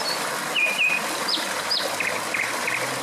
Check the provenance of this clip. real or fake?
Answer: fake